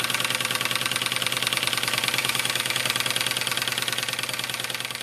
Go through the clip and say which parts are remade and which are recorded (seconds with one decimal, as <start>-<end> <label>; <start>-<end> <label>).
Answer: 0.0-2.2 recorded; 2.2-2.8 remade; 2.8-5.0 recorded